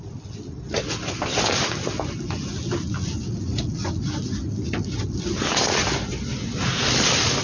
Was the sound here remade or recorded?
recorded